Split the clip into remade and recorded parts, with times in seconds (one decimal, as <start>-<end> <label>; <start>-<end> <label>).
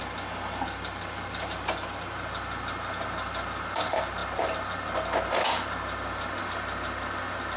0.0-7.6 recorded